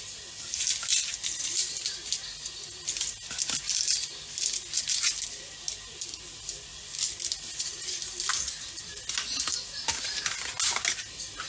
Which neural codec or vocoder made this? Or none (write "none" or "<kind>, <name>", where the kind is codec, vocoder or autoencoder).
none